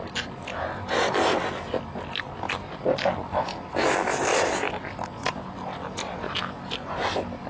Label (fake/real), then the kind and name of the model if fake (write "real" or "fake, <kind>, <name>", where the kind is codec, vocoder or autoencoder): real